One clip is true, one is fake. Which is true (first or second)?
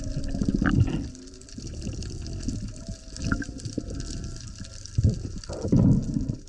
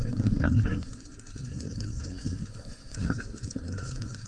first